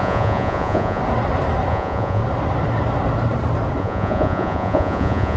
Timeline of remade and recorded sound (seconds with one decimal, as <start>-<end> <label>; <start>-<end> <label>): 0.0-1.0 remade; 1.0-1.7 recorded; 1.7-2.2 remade; 2.2-3.8 recorded; 3.8-5.4 remade